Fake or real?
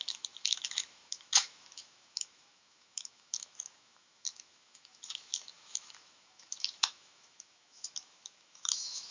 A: fake